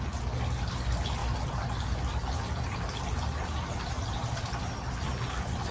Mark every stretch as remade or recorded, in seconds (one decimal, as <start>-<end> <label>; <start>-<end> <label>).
0.0-5.7 recorded